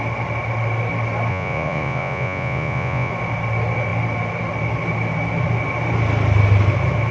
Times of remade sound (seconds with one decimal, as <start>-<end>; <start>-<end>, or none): 1.3-3.1